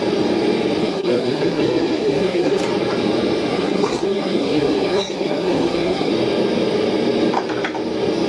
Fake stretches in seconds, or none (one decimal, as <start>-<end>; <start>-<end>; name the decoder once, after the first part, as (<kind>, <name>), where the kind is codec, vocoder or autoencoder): 0.8-2.6 (codec, SNAC); 3.5-6.1